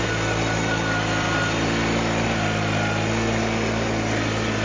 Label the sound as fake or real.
real